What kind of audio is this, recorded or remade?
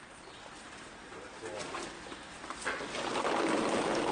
recorded